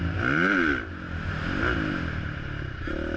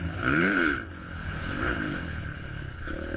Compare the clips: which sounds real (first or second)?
first